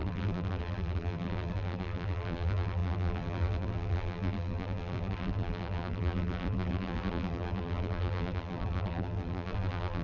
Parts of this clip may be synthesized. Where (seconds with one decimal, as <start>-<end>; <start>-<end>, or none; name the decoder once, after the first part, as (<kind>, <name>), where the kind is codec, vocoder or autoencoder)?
0.0-10.0 (vocoder, BigVGAN v2)